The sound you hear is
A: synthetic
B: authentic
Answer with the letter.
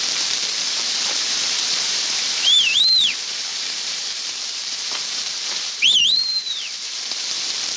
A